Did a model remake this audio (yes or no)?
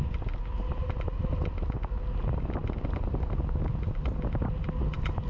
no